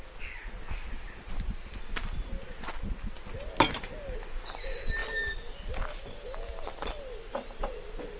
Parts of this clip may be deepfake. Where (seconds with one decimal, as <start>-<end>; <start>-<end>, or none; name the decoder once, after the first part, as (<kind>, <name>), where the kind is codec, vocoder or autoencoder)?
none